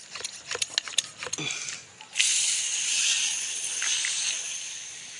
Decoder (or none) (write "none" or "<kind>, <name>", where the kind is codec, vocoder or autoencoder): none